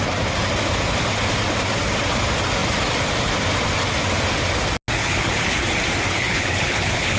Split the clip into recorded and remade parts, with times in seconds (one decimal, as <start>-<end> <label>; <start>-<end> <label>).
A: 0.0-5.0 recorded; 5.0-5.6 remade; 5.6-6.1 recorded; 6.1-7.2 remade